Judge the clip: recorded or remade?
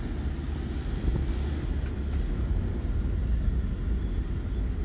recorded